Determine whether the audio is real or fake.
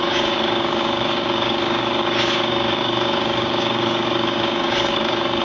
fake